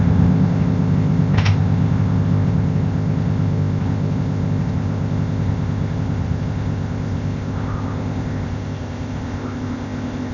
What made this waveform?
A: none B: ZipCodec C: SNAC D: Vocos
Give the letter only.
B